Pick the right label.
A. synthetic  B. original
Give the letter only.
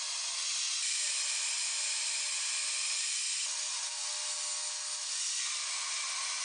B